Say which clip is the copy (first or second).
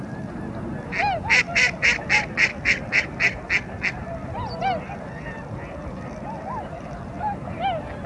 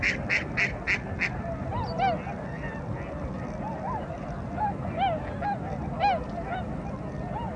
first